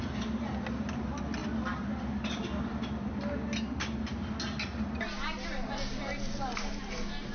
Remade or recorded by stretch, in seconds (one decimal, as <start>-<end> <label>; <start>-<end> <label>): 0.0-7.3 recorded